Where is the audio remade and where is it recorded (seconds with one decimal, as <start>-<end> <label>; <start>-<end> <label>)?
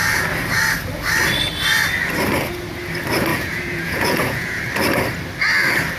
0.0-3.3 recorded; 3.3-4.6 remade; 4.6-6.0 recorded